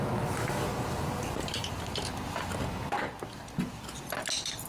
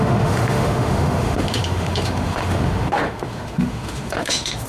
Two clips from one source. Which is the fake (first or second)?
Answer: second